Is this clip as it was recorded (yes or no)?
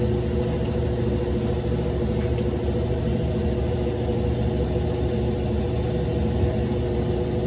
yes